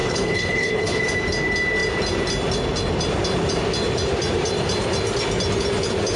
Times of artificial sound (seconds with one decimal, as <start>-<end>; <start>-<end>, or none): 0.0-1.0